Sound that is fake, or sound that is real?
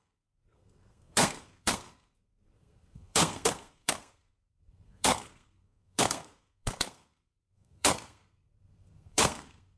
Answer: fake